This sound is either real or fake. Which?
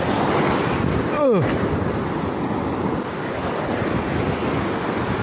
real